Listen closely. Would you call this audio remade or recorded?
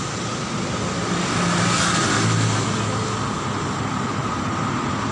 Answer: recorded